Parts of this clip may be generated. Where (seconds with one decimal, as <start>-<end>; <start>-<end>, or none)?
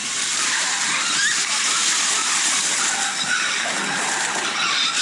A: 1.7-2.6; 4.0-5.0